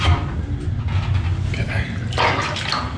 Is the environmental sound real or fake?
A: real